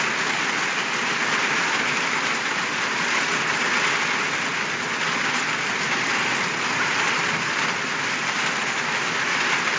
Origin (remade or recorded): recorded